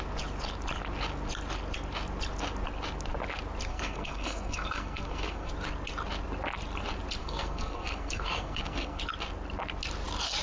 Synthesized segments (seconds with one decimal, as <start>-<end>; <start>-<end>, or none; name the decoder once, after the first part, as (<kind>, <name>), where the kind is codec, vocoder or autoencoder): 3.7-5.5 (codec, SNAC); 7.2-9.0

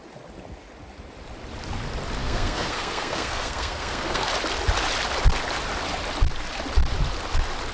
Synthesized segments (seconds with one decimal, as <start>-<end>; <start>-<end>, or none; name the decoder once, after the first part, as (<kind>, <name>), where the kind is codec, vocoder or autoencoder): 2.2-4.3 (codec, SNAC)

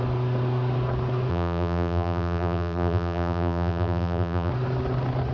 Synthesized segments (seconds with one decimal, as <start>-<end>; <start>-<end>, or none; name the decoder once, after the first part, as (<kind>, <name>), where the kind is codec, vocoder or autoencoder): 1.3-4.5 (vocoder, BigVGAN v2)

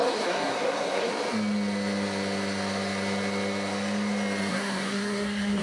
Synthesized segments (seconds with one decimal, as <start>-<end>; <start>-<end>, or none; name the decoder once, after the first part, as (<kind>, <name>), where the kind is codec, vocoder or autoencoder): 0.0-1.1 (codec, SNAC); 4.5-5.6